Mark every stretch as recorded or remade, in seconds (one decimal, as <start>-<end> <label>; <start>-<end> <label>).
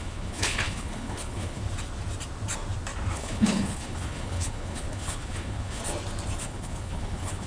0.0-1.6 remade; 1.6-3.1 recorded; 3.1-5.8 remade; 5.8-6.4 recorded; 6.4-7.5 remade